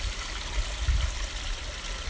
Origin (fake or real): real